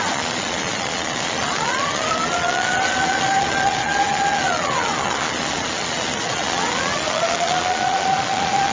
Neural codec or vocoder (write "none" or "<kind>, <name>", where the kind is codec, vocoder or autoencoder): vocoder, Vocos